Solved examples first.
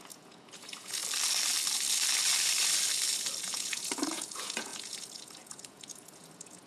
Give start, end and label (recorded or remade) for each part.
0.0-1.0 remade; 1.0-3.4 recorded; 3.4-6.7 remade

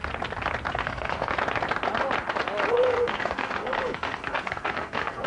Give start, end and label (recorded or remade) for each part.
0.0-0.7 recorded; 0.7-1.3 remade; 1.3-2.7 recorded; 2.7-5.3 remade

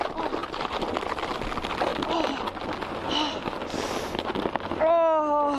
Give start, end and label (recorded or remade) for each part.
0.0-0.4 recorded; 0.4-0.9 remade; 0.9-5.6 recorded

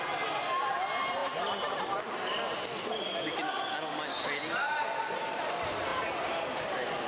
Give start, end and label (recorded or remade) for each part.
0.0-7.1 recorded